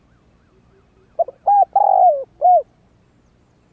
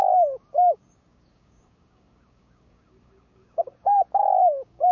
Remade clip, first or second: second